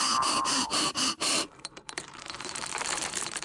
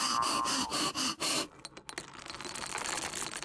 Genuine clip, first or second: second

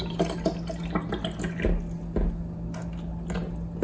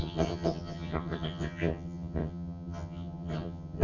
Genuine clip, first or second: first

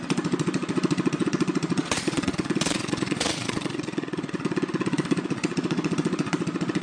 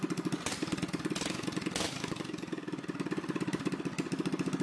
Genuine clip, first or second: second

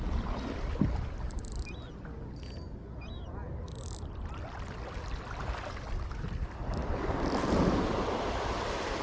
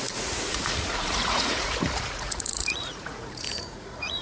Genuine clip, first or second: first